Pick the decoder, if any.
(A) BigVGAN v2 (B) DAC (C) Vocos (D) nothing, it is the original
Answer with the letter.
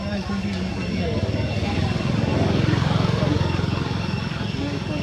B